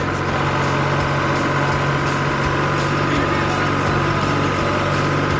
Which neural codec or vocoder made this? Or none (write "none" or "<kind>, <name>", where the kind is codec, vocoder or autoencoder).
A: none